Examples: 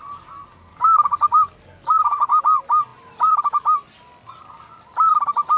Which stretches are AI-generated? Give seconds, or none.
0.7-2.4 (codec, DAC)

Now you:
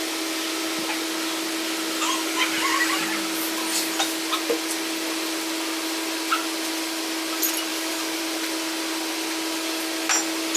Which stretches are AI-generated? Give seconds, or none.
7.7-8.2 (codec, DAC)